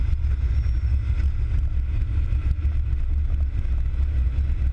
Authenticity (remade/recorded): recorded